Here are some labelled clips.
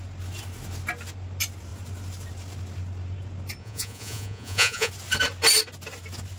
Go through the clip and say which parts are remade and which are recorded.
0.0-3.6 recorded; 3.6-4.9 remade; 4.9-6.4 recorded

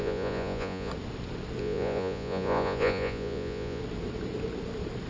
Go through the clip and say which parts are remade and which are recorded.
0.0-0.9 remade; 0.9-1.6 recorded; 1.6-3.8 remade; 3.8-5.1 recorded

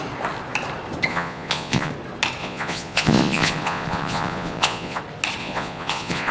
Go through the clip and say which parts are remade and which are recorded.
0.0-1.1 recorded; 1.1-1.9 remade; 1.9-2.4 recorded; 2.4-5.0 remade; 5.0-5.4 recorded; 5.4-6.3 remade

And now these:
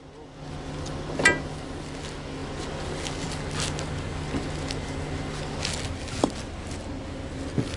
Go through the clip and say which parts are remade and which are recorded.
0.0-7.8 recorded

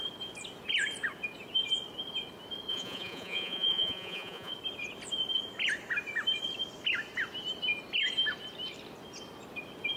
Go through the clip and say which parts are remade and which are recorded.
0.0-2.7 recorded; 2.7-4.5 remade; 4.5-10.0 recorded

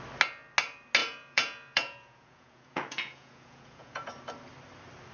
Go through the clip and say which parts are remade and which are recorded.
0.0-1.0 recorded; 1.0-4.1 remade; 4.1-5.1 recorded

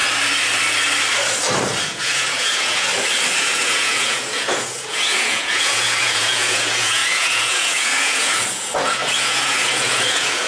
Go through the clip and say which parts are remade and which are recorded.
0.0-1.8 recorded; 1.8-2.9 remade; 2.9-3.4 recorded; 3.4-10.5 remade

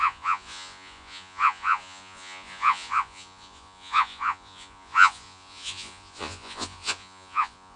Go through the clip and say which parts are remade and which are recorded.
0.0-7.8 remade